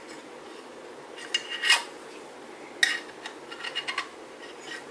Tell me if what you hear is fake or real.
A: real